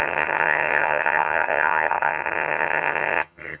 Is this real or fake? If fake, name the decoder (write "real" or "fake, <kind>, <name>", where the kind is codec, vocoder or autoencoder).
fake, vocoder, HiFi-GAN